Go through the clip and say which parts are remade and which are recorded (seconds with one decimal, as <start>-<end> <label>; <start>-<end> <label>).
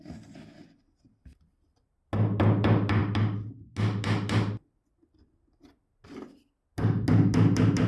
0.0-7.9 recorded